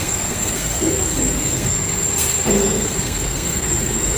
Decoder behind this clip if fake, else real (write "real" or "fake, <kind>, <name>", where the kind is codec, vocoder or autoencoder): fake, codec, SNAC